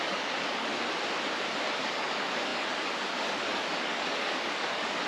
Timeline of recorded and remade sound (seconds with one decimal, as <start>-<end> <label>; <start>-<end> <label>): 0.0-0.7 remade; 0.7-1.6 recorded; 1.6-5.1 remade